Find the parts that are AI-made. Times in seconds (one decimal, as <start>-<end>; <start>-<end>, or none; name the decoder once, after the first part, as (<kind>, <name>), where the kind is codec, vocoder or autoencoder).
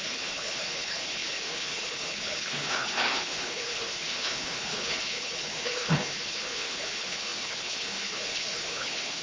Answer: 0.0-9.2 (codec, HILCodec)